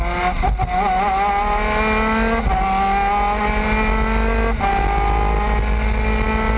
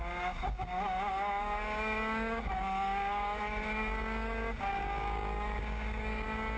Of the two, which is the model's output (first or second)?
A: second